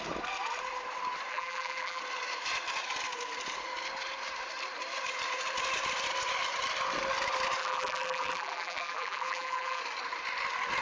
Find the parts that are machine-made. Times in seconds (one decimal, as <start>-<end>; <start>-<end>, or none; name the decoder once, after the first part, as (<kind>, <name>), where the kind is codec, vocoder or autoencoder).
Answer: 1.3-2.0 (vocoder, BigVGAN v2); 7.6-9.8